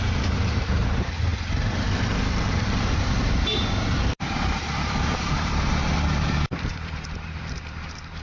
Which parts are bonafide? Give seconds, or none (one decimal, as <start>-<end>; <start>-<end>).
none